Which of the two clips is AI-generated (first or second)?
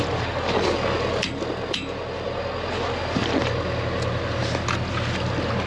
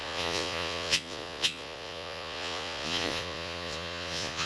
second